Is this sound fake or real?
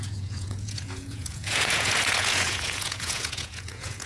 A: fake